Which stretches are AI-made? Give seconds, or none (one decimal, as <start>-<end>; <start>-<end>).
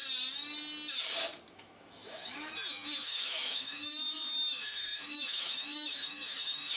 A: 1.5-6.8